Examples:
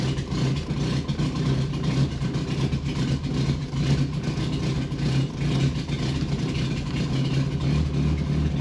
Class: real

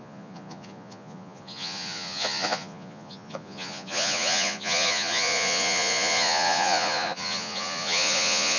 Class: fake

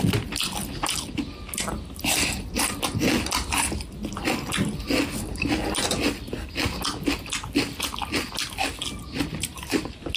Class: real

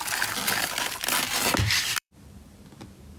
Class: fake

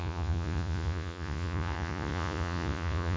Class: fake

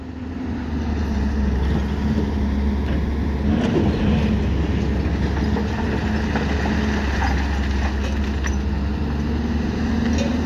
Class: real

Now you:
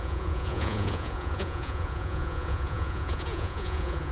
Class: fake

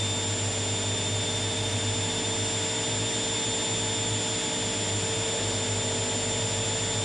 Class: real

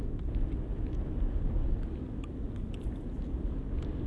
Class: real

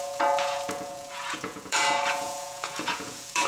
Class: fake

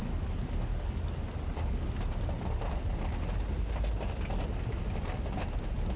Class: real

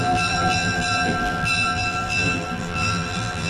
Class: fake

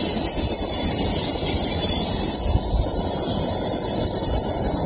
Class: real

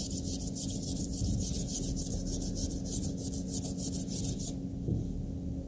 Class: real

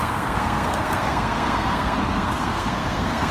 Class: fake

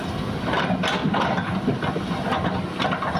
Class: real